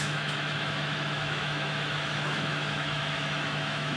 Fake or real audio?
fake